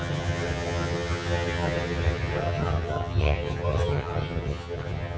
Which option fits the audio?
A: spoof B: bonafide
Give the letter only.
A